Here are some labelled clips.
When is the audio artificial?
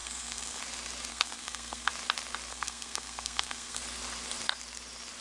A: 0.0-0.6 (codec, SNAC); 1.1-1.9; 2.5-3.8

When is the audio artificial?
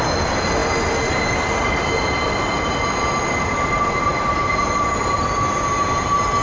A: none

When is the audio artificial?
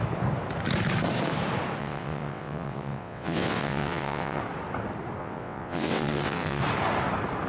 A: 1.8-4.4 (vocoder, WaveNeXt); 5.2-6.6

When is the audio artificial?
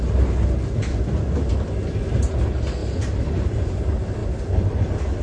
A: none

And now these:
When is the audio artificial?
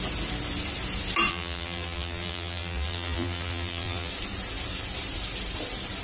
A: 1.3-4.1 (vocoder, BigVGAN v2)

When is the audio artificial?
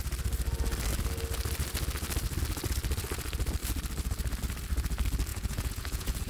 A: 5.3-6.3 (vocoder, Vocos)